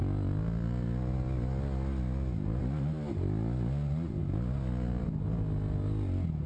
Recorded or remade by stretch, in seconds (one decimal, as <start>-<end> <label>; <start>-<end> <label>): 0.0-6.5 recorded